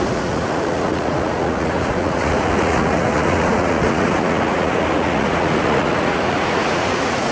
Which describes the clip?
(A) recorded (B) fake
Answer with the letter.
B